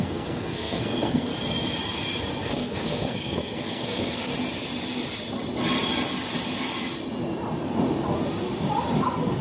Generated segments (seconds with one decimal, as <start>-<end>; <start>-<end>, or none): 0.0-1.3; 2.4-4.3

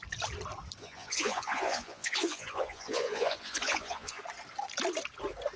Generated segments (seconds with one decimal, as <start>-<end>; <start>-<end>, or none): 0.8-4.2

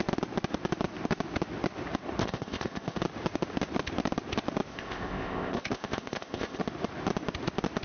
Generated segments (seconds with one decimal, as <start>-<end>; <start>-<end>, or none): 2.2-3.0; 4.7-6.6

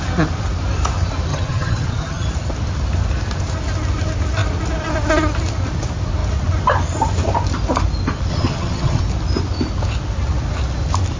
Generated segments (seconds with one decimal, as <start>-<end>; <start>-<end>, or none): 1.3-2.3; 8.3-9.0